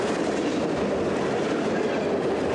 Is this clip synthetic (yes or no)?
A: no